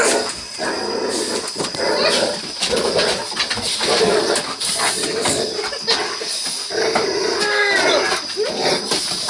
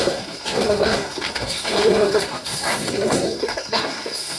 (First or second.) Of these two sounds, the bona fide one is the first